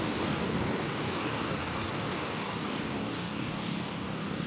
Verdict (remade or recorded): remade